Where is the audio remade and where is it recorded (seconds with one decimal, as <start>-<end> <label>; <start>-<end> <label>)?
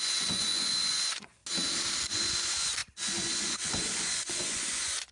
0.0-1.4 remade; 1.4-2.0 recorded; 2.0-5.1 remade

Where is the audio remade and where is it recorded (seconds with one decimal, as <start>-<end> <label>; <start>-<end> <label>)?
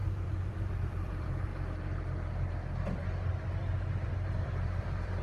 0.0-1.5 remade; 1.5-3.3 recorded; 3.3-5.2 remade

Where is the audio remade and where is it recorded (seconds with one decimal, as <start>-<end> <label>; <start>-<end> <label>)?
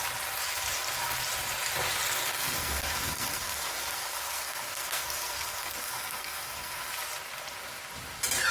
0.0-2.2 recorded; 2.2-6.9 remade; 6.9-8.5 recorded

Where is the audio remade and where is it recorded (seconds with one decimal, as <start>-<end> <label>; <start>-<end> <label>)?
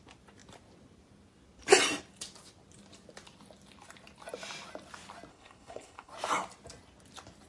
0.0-5.3 recorded; 5.3-6.1 remade; 6.1-7.5 recorded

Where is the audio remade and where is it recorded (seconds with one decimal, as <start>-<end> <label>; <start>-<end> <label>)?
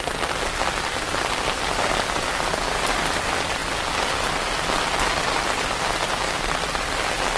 0.0-7.4 recorded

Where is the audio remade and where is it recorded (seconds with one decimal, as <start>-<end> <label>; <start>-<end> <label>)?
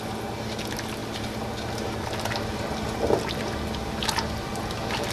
0.0-5.1 recorded